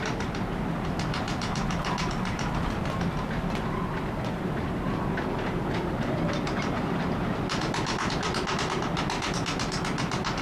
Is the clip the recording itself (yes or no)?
yes